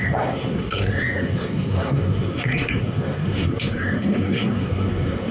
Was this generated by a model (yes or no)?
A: yes